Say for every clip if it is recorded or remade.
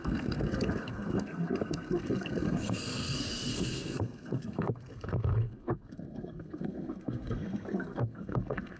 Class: remade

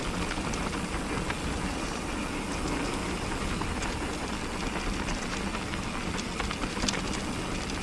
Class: recorded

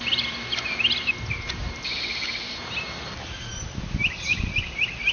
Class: remade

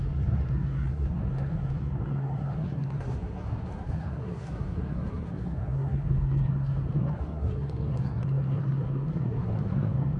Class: remade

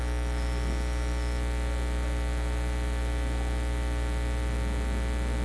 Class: recorded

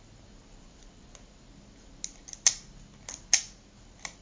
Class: recorded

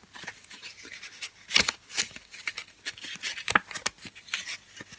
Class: recorded